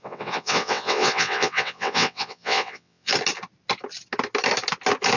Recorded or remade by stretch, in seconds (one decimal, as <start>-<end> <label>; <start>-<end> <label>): 0.0-3.1 remade; 3.1-5.2 recorded